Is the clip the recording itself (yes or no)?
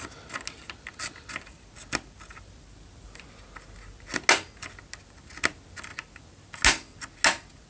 yes